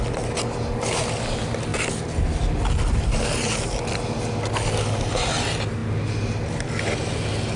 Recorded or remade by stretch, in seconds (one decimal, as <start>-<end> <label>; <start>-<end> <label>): 0.0-7.6 recorded